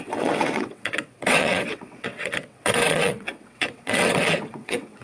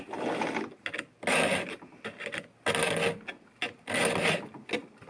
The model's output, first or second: first